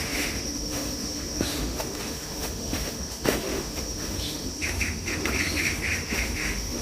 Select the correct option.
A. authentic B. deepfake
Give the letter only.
B